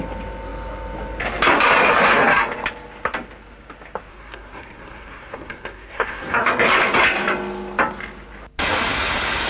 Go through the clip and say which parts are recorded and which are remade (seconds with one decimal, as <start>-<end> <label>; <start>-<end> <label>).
0.0-4.1 recorded; 4.1-6.7 remade; 6.7-9.5 recorded